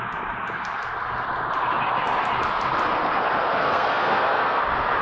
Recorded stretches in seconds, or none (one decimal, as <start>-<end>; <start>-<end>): 0.0-3.6; 4.6-5.0